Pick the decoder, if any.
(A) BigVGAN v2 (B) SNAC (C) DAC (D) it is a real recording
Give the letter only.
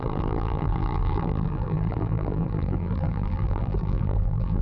A